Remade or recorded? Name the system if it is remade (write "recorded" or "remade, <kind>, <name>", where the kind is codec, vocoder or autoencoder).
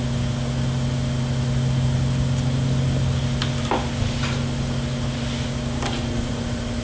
recorded